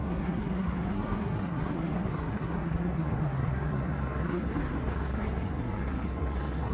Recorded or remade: remade